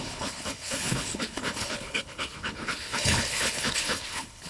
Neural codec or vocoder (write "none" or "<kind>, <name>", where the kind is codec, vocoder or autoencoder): codec, HILCodec